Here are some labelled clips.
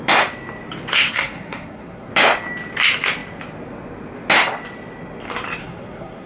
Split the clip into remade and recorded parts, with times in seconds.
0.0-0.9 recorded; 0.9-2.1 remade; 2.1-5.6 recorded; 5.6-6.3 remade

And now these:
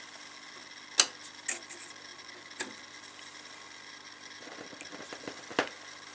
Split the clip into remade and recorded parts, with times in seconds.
0.0-6.1 recorded

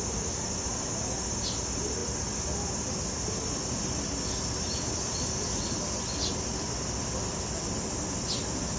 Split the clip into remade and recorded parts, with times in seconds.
0.0-8.8 recorded